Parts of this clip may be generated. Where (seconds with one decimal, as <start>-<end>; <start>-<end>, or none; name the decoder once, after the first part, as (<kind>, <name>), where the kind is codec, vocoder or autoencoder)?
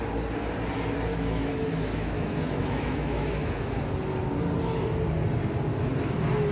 1.1-3.8 (autoencoder, DAC-VAE)